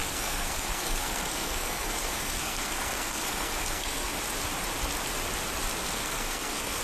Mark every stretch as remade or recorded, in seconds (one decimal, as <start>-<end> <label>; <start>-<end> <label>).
0.0-4.1 remade; 4.1-5.8 recorded; 5.8-6.8 remade